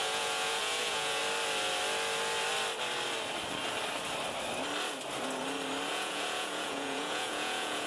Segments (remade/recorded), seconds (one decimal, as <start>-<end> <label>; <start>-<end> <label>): 0.0-1.2 remade; 1.2-5.9 recorded; 5.9-7.9 remade